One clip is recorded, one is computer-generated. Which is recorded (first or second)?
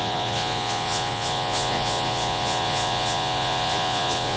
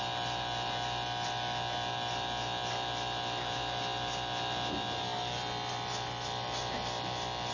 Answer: second